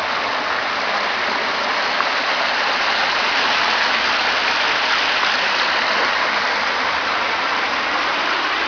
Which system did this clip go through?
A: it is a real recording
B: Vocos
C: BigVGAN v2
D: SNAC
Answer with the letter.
A